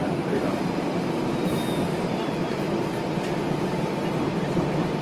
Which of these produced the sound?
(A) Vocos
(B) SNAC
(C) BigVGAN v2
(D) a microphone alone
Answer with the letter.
C